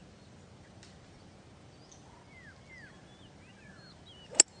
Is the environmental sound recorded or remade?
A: recorded